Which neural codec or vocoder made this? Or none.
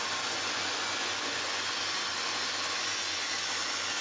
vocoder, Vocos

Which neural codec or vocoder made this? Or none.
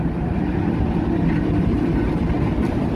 none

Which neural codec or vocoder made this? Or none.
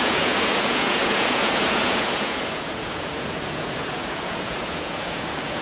vocoder, Vocos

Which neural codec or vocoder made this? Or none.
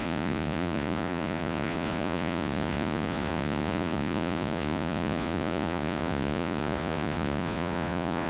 vocoder, Vocos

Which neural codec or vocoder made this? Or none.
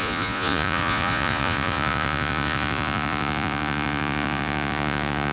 vocoder, Vocos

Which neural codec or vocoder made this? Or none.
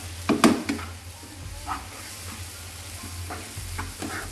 none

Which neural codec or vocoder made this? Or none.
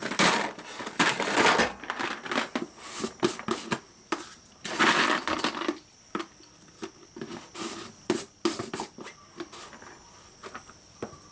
none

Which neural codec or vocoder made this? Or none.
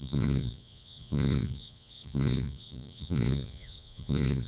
vocoder, Vocos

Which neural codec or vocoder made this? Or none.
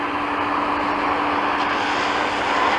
none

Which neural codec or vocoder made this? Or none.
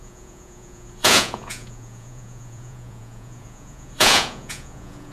vocoder, Vocos